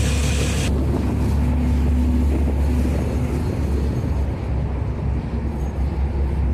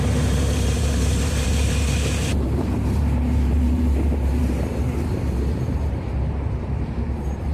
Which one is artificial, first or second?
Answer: second